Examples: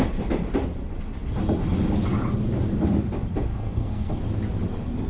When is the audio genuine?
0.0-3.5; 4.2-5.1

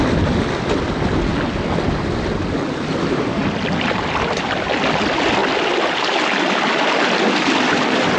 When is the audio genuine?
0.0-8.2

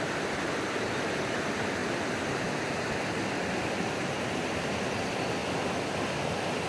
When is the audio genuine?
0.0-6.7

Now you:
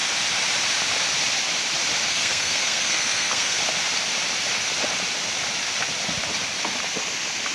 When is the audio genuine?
0.0-2.1; 3.6-7.5

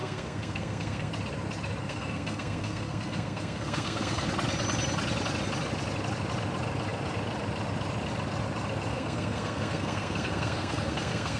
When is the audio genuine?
1.1-1.8; 4.3-8.9

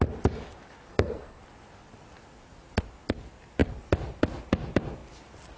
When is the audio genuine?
0.0-0.9; 1.4-5.6

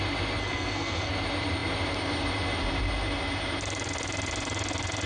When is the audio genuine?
0.0-0.4; 1.1-5.1